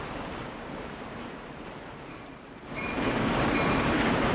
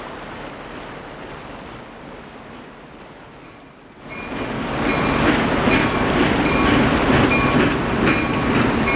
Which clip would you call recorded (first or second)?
second